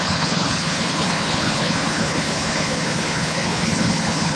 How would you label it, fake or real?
fake